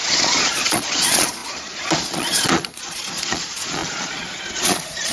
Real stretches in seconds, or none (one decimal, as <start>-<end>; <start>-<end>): none